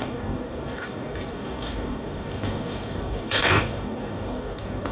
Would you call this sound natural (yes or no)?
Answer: no